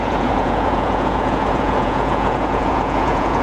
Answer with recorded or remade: remade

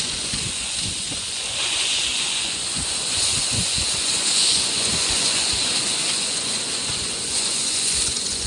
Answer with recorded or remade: remade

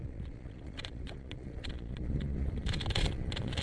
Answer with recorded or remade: remade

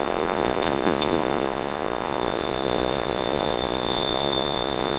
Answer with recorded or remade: remade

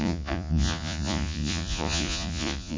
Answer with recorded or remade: remade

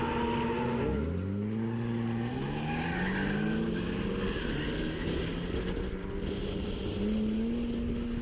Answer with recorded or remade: recorded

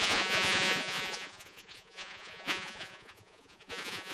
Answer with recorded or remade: remade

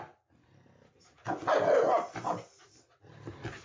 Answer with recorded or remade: recorded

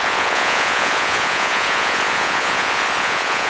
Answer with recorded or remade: remade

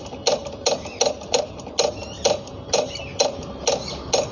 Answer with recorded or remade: recorded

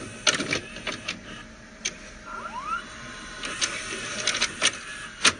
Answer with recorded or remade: recorded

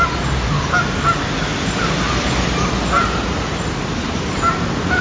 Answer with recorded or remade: recorded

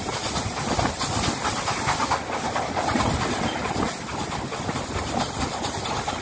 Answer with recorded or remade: recorded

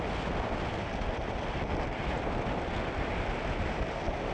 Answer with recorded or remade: recorded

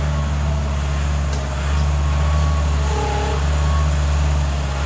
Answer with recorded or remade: recorded